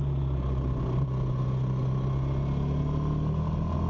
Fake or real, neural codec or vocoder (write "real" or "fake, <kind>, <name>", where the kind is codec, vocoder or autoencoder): real